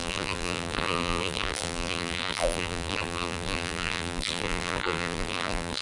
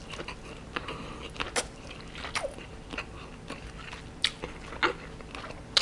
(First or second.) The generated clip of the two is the first